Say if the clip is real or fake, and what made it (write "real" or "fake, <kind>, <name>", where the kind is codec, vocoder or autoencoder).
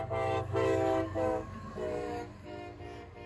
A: fake, codec, DAC